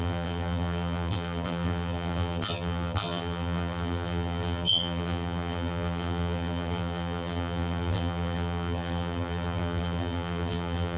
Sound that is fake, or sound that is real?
fake